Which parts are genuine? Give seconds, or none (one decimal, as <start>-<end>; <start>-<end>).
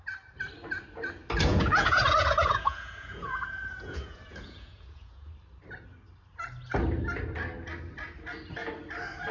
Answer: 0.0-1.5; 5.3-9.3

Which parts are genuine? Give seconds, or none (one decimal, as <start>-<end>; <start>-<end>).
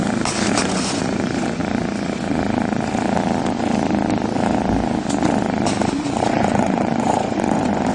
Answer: 0.0-0.5; 1.6-6.3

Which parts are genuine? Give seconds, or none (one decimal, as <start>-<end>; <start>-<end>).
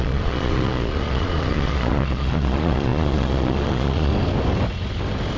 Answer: 4.1-5.4